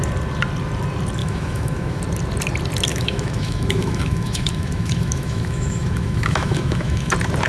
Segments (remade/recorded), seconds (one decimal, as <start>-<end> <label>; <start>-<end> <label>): 0.0-1.2 recorded; 1.2-2.0 remade; 2.0-2.9 recorded; 2.9-7.1 remade; 7.1-7.5 recorded